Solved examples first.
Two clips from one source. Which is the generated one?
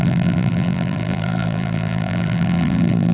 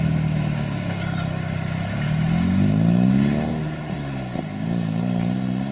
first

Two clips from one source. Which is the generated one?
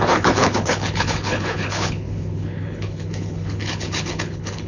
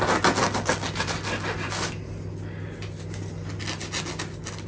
first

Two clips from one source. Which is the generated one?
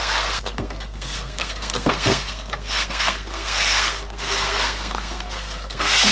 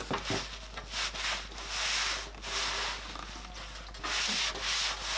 first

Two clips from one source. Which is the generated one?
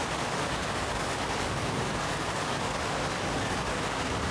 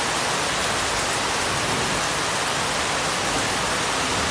first